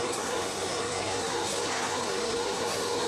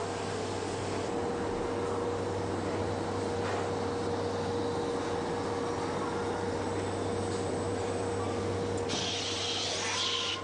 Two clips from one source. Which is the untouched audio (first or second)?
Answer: second